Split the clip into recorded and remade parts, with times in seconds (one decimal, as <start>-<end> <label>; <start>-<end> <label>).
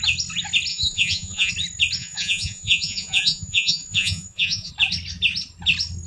0.0-0.7 recorded; 0.7-1.5 remade; 1.5-2.0 recorded; 2.0-4.7 remade; 4.7-6.1 recorded